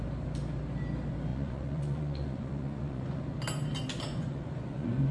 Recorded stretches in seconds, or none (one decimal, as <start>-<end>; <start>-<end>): 0.0-1.3; 3.2-4.1